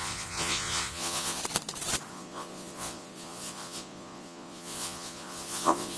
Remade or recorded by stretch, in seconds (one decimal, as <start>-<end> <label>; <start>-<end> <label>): 0.0-1.4 remade; 1.4-2.1 recorded; 2.1-6.0 remade

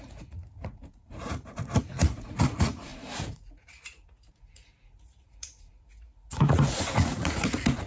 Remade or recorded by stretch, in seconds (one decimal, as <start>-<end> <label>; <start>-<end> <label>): 0.0-7.9 remade

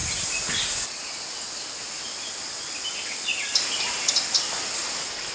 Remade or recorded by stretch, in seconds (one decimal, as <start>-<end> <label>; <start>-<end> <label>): 0.0-5.3 recorded

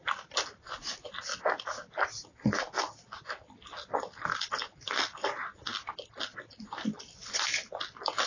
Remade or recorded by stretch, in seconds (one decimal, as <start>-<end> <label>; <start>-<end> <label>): 0.0-8.3 recorded